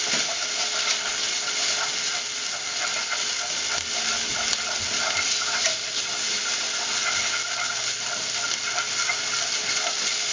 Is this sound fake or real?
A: real